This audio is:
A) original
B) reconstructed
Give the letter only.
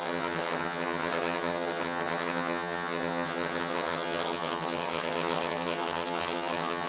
B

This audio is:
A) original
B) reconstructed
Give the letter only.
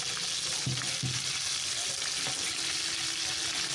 A